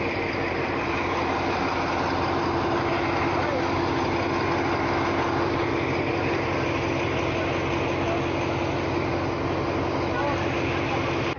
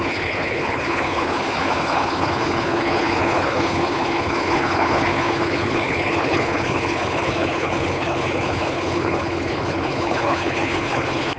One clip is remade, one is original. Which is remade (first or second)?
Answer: second